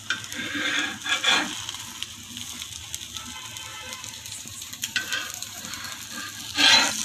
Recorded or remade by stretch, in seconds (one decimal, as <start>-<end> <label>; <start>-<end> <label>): 0.0-3.7 recorded; 3.7-5.7 remade; 5.7-7.0 recorded